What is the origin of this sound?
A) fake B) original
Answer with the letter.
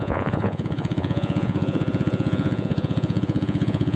A